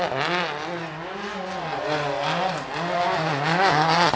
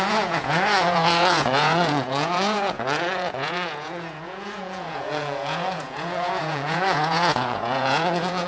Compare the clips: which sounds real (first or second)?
first